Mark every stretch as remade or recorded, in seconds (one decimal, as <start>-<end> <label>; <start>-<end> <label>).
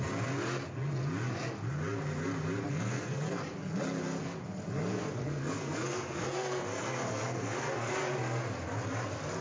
0.0-2.7 recorded; 2.7-3.4 remade; 3.4-5.2 recorded; 5.2-7.9 remade; 7.9-9.4 recorded